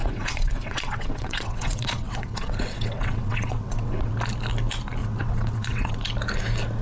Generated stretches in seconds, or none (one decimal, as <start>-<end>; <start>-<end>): 0.0-4.1; 5.0-6.0